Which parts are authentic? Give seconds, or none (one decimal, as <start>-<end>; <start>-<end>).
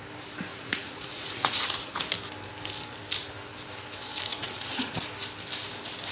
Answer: 0.0-0.5; 2.0-4.3; 5.0-6.1